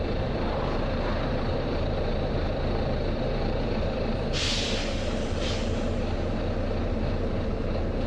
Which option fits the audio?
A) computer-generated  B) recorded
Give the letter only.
A